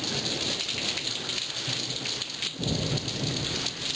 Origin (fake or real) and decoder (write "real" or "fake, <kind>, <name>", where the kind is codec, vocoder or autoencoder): real